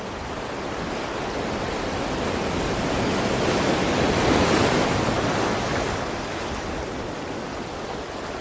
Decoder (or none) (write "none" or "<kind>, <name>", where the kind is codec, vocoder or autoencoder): none